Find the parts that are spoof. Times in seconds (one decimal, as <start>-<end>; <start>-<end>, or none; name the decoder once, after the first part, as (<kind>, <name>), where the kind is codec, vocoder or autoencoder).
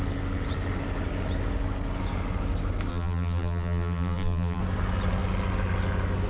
2.9-4.6 (vocoder, BigVGAN v2)